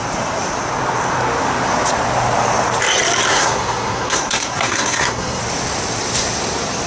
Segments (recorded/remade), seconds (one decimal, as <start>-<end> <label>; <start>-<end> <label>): 0.0-3.3 recorded; 3.3-5.4 remade; 5.4-6.9 recorded